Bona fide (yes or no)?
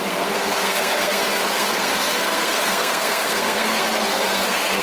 no